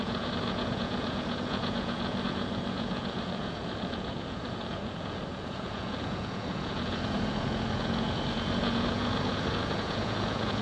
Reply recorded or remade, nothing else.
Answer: remade